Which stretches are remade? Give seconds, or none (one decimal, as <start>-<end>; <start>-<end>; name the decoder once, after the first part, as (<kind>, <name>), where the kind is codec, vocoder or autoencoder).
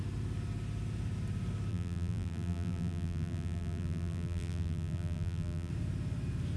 1.7-5.7 (vocoder, BigVGAN v2)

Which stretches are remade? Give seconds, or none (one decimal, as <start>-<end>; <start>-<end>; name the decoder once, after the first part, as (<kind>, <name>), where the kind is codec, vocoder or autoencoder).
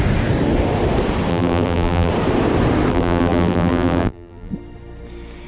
1.3-2.1 (vocoder, BigVGAN v2); 2.9-4.5